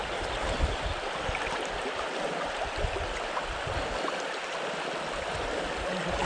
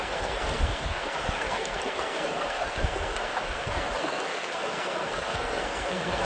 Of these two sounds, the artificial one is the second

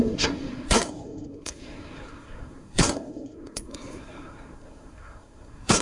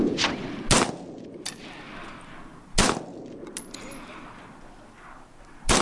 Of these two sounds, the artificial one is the first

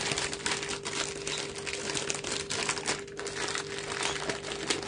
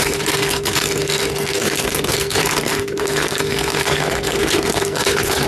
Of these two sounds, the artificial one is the second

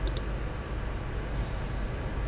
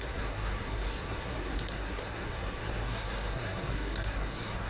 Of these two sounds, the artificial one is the second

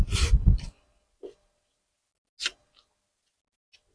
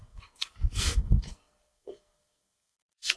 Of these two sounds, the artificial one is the second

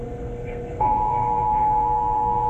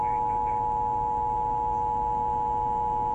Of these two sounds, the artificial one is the first